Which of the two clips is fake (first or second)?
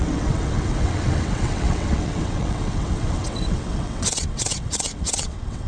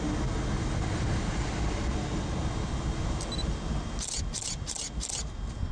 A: first